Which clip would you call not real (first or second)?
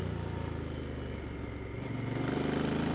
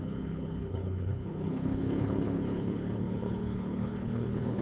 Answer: second